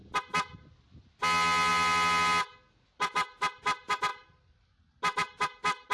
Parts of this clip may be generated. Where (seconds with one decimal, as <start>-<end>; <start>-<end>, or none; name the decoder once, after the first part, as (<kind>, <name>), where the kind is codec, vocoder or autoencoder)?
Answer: none